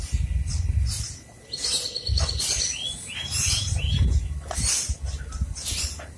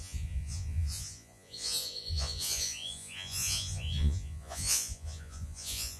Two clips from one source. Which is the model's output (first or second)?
second